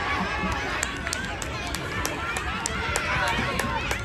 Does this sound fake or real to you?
real